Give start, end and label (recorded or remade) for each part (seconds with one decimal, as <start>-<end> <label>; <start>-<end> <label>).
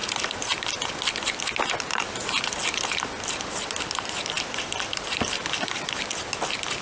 0.0-6.8 recorded